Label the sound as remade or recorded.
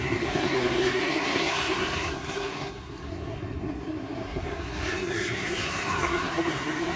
remade